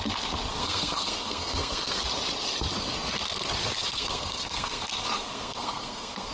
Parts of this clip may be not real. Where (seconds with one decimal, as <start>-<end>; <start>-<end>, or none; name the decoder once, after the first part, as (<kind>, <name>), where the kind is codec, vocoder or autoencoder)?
0.5-2.0 (codec, SNAC); 3.8-6.3